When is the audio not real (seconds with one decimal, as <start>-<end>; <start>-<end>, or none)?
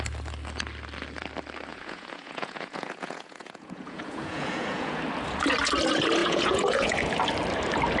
1.7-5.0; 6.2-7.1